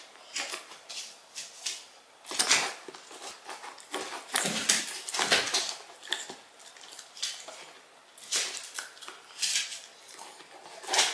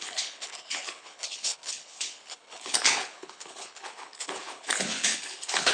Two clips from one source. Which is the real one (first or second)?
first